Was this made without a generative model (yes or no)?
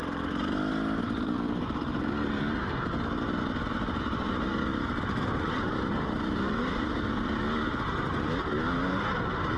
yes